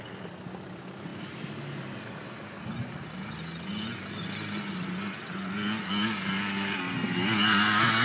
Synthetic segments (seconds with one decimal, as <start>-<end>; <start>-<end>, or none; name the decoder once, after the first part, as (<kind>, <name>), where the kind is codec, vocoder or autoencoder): none